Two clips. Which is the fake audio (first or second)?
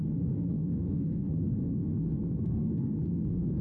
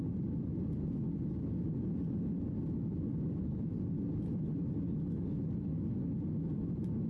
first